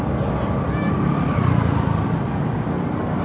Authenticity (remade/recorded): recorded